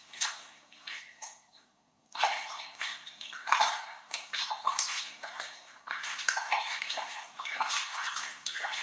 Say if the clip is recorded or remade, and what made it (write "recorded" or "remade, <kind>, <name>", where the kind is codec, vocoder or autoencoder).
remade, codec, SNAC